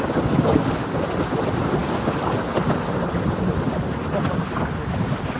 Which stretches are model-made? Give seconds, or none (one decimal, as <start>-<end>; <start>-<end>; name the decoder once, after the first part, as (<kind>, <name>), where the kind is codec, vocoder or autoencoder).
none